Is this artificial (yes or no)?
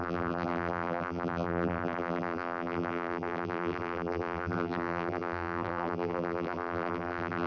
yes